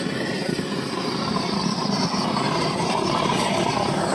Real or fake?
fake